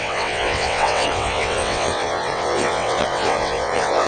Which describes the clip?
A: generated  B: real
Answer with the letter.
A